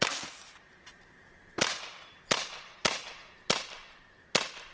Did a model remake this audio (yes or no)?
no